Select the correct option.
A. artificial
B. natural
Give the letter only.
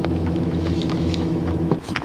A